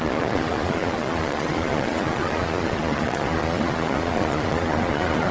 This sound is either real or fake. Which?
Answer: fake